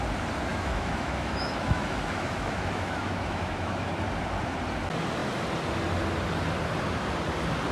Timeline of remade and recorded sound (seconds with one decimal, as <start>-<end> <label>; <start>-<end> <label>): 0.0-0.5 recorded; 0.5-3.9 remade; 3.9-7.7 recorded